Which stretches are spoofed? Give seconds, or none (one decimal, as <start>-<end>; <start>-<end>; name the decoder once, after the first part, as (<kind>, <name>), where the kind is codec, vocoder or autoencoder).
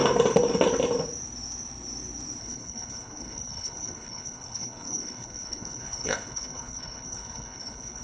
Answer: 2.4-8.0 (codec, HILCodec)